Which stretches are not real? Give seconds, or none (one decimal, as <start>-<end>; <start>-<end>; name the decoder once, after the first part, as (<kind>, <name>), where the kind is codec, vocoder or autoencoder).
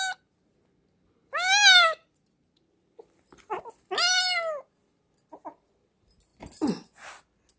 none